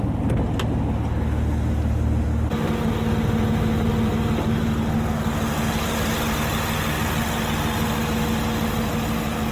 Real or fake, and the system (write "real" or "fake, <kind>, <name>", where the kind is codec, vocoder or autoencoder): real